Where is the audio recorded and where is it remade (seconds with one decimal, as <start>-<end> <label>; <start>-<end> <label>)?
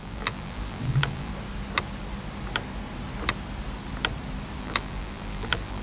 0.0-1.3 remade; 1.3-4.6 recorded; 4.6-5.8 remade